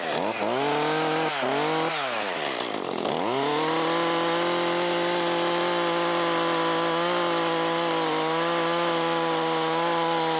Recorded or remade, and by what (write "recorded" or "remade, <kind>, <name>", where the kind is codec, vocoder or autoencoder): recorded